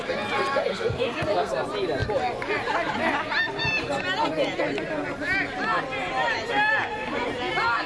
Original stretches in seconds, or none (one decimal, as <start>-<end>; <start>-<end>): 0.0-0.7; 1.5-7.9